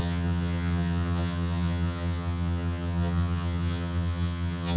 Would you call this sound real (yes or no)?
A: no